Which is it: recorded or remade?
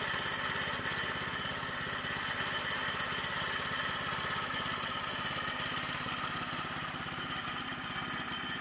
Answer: recorded